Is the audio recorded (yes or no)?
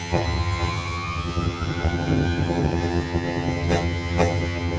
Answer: no